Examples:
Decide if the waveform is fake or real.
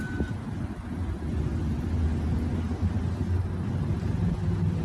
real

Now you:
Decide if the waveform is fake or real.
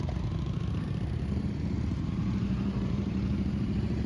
fake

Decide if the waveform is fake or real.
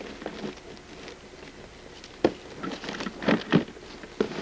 real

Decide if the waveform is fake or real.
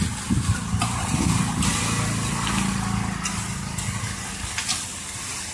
real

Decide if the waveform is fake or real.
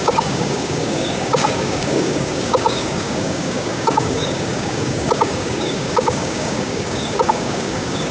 fake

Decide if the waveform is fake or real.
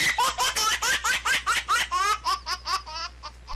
fake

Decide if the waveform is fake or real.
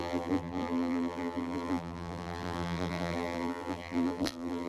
fake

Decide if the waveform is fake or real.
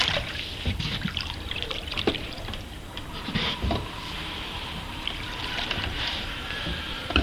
fake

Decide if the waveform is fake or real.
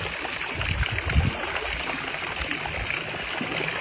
real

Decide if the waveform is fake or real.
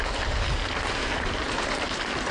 real